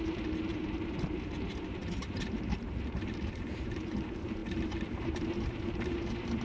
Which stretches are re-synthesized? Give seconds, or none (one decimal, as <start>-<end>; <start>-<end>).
0.0-6.4